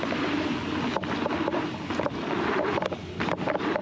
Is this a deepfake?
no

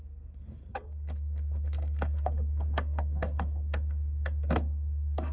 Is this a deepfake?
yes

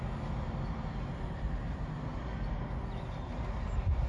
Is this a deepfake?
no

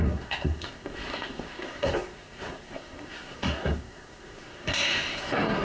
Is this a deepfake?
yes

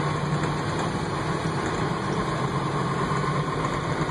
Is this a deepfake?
no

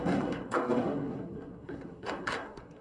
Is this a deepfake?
yes